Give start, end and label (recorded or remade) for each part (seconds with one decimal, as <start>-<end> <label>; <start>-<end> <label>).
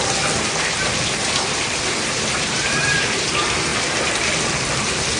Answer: 0.0-1.5 recorded; 1.5-3.7 remade; 3.7-4.5 recorded; 4.5-5.2 remade